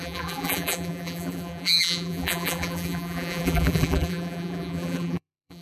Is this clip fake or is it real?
fake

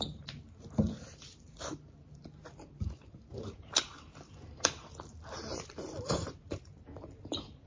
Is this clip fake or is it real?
fake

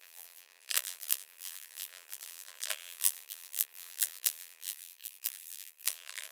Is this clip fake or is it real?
fake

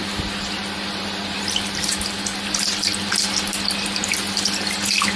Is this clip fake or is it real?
real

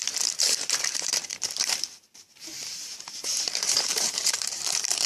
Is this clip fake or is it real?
fake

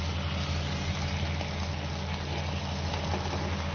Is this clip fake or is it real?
real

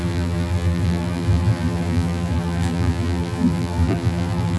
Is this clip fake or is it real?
fake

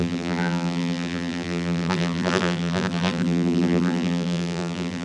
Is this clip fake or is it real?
fake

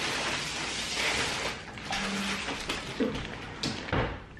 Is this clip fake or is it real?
real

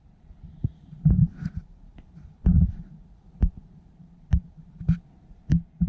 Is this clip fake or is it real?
fake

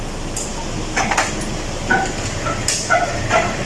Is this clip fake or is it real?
real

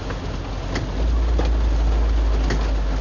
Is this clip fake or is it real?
real